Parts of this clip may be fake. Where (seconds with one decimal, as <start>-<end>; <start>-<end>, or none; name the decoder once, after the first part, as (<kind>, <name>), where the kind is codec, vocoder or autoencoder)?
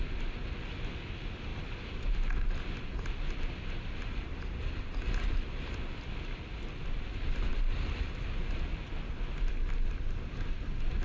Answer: none